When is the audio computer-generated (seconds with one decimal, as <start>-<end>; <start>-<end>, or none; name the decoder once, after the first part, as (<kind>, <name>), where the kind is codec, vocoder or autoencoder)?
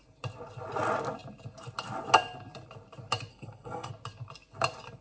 3.3-3.9 (codec, SNAC)